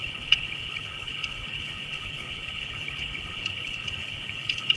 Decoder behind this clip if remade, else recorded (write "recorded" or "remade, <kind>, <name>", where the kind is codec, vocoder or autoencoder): remade, codec, HILCodec